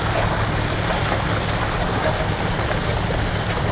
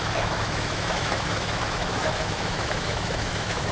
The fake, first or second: second